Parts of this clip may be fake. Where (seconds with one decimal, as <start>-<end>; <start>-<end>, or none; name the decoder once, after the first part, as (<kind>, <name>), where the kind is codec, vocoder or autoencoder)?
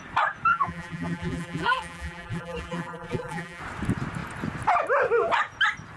0.5-3.6 (vocoder, BigVGAN v2)